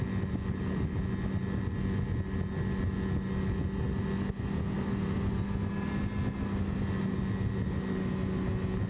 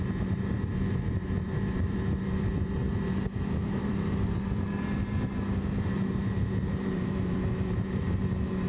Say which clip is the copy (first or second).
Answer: second